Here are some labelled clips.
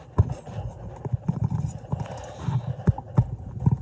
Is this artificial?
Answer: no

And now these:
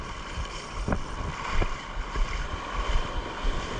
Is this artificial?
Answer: yes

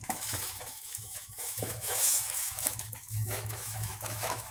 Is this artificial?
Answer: yes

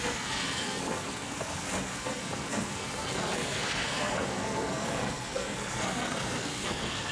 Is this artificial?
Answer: yes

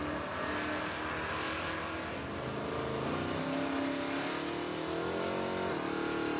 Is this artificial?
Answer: no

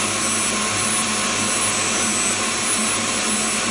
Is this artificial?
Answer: no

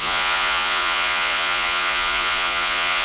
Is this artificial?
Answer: yes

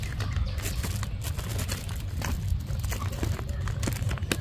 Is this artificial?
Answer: no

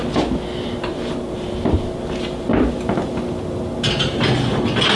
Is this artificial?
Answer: no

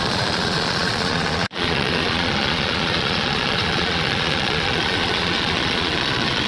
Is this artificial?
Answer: yes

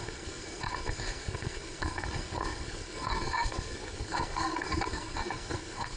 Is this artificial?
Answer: yes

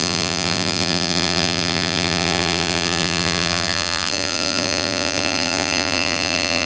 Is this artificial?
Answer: yes